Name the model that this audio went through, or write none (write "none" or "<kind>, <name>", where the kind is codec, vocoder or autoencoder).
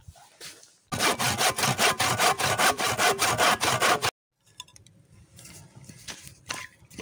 none